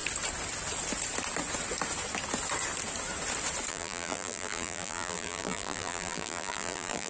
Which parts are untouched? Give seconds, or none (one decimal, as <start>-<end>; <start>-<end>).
0.0-3.7